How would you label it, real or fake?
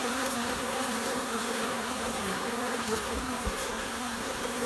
fake